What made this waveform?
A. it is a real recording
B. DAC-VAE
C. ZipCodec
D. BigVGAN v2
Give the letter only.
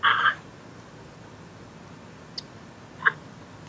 A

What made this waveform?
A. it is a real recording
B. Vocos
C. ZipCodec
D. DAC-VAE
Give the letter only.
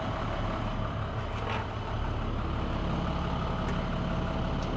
A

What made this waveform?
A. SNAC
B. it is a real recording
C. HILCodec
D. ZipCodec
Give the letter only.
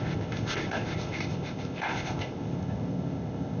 D